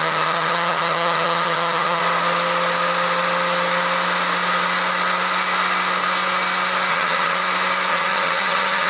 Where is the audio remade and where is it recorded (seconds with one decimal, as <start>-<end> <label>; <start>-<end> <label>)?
0.0-2.0 remade; 2.0-6.9 recorded; 6.9-7.4 remade; 7.4-7.9 recorded; 7.9-8.9 remade